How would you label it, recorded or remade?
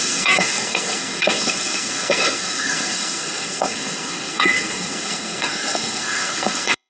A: remade